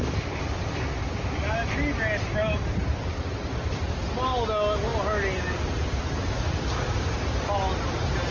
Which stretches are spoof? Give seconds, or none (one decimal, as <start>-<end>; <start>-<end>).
none